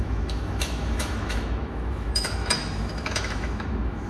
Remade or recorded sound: remade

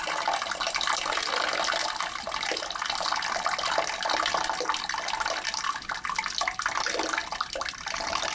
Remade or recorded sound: recorded